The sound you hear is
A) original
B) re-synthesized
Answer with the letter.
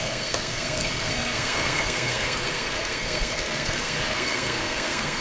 B